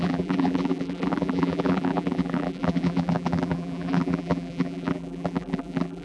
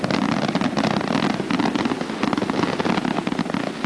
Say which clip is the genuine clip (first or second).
second